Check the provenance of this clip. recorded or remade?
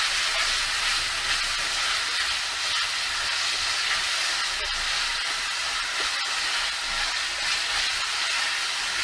recorded